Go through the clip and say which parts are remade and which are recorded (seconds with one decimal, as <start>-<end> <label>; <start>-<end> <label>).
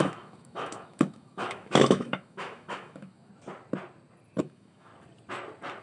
0.0-3.3 remade; 3.3-4.4 recorded; 4.4-4.9 remade; 4.9-5.8 recorded